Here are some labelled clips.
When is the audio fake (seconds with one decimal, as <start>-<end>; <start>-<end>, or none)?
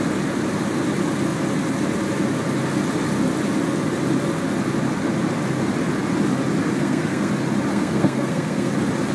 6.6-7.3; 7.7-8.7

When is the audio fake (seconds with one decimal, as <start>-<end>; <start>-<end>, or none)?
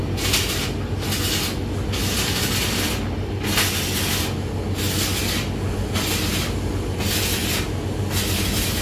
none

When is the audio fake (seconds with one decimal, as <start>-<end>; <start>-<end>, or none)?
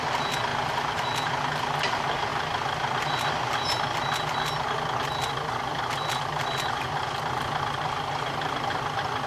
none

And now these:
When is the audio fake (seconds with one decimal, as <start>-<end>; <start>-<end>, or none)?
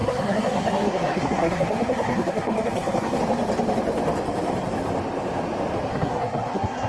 0.0-3.2; 5.9-6.9